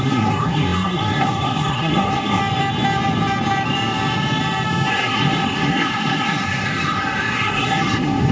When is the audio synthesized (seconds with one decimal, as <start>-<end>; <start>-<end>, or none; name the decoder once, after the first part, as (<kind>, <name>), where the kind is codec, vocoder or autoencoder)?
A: 0.0-2.4 (codec, SNAC); 4.9-8.3